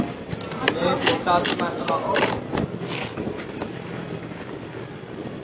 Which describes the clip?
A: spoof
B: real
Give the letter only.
B